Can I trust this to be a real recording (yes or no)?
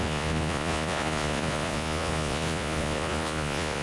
no